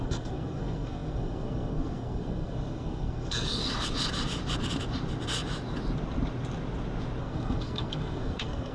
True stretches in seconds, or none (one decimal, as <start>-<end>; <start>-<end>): 3.6-7.2